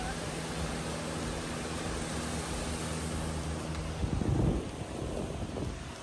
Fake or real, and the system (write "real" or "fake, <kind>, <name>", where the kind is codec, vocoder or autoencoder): real